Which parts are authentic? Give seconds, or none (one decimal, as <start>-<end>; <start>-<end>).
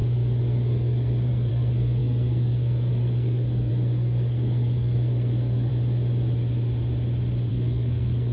5.7-7.5